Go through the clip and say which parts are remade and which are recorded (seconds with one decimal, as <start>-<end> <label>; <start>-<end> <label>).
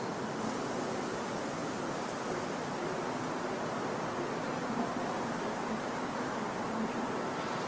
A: 0.0-1.6 recorded; 1.6-2.3 remade; 2.3-7.7 recorded